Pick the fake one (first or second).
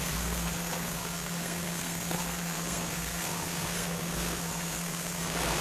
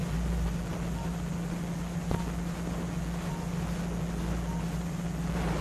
first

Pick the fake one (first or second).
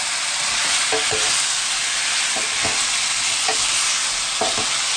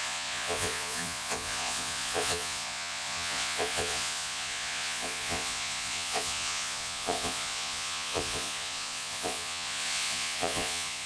second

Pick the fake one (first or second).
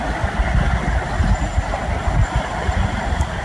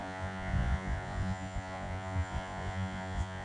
second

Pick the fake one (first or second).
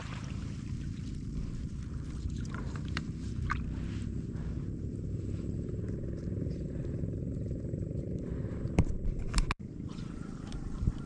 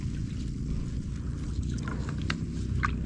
first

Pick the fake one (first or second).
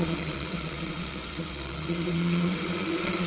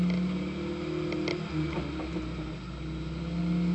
first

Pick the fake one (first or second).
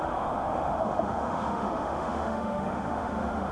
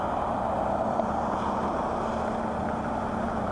first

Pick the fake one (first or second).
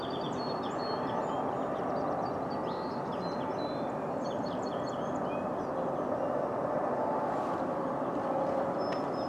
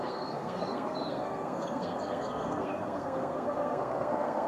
second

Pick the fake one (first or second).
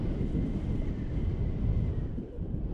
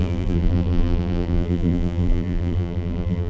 second